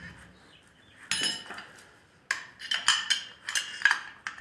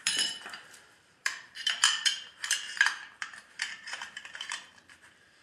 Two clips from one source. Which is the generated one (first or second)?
second